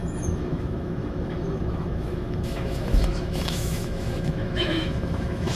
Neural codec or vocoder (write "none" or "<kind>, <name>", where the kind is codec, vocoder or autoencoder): autoencoder, DAC-VAE